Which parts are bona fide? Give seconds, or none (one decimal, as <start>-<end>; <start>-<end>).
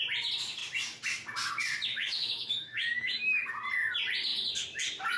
0.0-1.9; 3.5-5.2